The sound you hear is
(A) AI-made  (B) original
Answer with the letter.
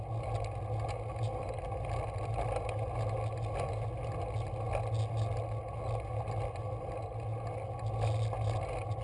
B